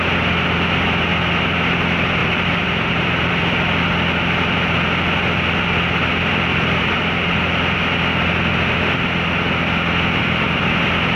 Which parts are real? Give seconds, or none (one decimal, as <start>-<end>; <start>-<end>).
0.0-2.2; 3.3-6.5; 7.0-10.2